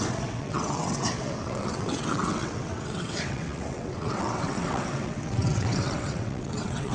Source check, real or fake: fake